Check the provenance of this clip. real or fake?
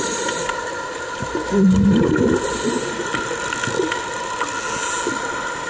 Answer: real